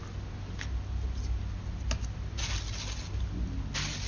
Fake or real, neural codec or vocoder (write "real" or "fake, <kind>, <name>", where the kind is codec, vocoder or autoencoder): real